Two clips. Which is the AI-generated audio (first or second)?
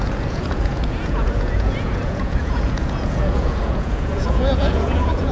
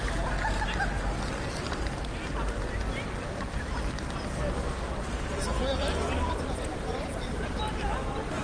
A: first